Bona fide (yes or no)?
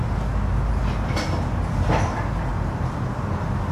yes